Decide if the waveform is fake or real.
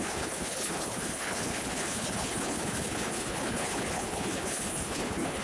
fake